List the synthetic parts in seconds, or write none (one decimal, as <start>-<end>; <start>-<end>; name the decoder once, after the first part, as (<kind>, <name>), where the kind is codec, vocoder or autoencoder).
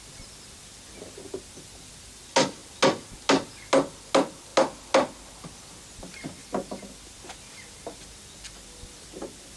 none